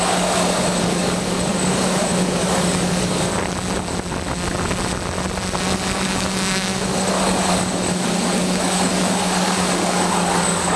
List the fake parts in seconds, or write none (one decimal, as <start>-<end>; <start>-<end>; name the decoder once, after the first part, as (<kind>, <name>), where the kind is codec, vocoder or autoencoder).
0.0-3.3 (codec, DAC); 5.6-10.8